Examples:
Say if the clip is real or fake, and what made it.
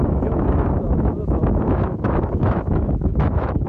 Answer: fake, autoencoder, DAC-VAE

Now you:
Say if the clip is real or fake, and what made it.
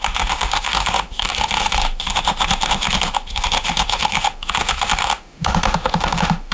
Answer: fake, autoencoder, DAC-VAE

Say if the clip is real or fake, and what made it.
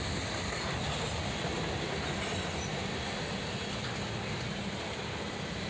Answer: real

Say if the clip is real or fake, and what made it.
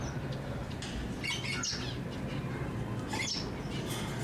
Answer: real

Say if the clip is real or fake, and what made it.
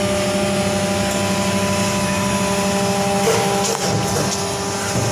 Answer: real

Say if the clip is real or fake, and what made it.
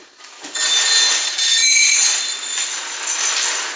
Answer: real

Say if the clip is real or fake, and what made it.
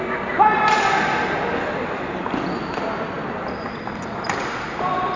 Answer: real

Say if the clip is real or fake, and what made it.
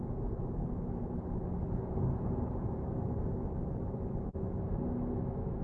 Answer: fake, autoencoder, DAC-VAE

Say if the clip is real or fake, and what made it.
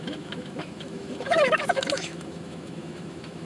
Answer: fake, autoencoder, DAC-VAE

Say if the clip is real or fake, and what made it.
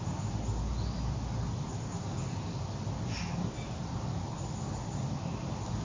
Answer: real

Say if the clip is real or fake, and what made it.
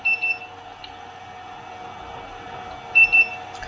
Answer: real